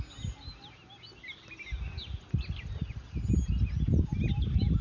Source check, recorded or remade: recorded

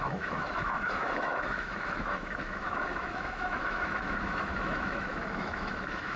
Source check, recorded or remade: remade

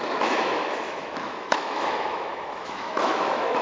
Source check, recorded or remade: remade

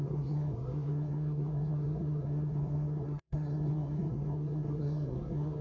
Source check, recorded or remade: remade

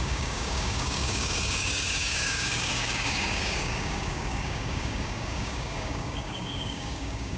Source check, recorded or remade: remade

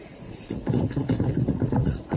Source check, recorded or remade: remade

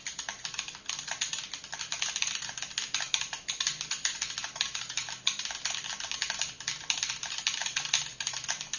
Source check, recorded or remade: recorded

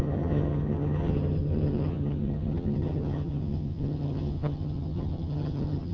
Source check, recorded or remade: remade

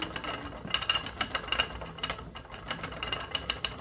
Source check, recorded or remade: recorded